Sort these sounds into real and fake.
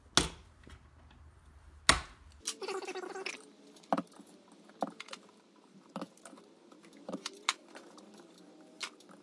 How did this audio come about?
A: real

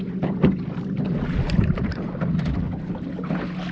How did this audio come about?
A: real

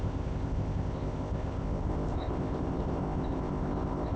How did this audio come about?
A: fake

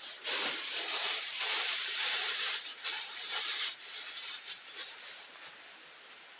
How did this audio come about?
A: fake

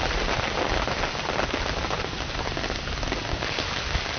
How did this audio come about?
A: real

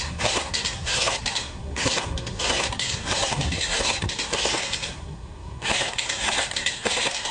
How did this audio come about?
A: fake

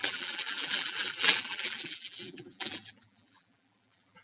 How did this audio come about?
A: fake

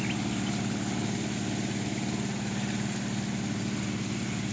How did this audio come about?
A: real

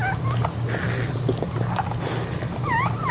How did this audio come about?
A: real